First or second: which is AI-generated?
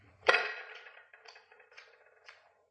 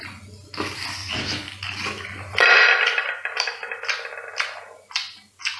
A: first